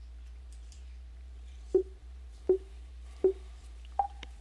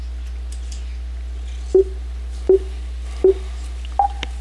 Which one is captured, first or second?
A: second